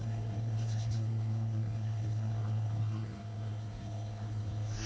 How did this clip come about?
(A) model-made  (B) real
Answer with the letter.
A